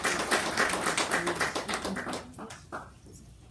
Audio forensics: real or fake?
real